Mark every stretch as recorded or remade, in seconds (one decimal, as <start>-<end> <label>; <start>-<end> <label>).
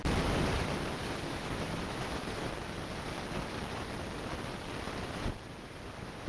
0.0-1.0 recorded; 1.0-2.5 remade; 2.5-6.3 recorded